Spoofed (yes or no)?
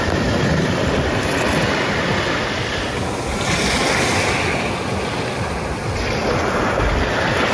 no